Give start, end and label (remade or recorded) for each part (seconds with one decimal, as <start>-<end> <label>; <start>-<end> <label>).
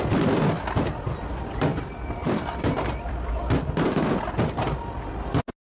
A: 0.0-1.7 recorded; 1.7-3.3 remade; 3.3-5.7 recorded